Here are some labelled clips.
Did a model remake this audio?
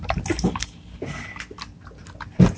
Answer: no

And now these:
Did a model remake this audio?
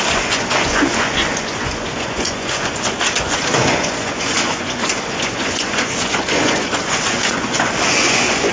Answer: yes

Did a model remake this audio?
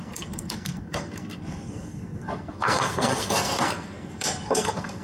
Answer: yes